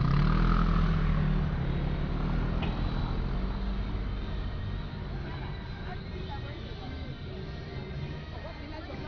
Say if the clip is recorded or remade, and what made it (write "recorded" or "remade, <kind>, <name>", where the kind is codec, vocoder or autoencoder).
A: recorded